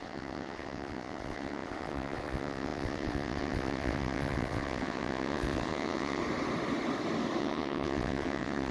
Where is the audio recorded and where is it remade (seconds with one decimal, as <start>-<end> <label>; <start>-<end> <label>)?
0.0-6.2 remade; 6.2-7.4 recorded; 7.4-8.7 remade